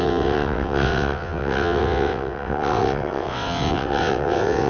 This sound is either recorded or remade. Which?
remade